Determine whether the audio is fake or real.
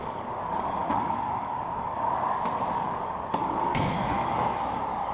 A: fake